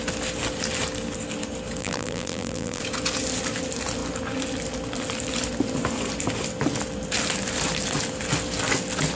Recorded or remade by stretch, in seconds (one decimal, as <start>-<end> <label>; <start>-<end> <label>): 0.0-1.8 recorded; 1.8-2.8 remade; 2.8-9.2 recorded